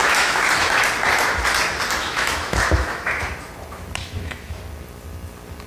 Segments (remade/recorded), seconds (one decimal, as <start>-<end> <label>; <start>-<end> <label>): 0.0-0.8 remade; 0.8-2.0 recorded; 2.0-3.2 remade; 3.2-4.0 recorded; 4.0-4.6 remade; 4.6-5.7 recorded